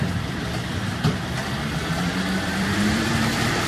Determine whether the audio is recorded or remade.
remade